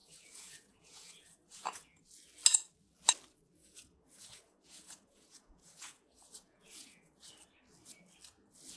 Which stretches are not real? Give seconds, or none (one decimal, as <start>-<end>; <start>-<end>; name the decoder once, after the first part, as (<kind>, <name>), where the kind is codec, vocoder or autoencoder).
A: 0.0-2.0 (vocoder, Vocos); 3.6-7.3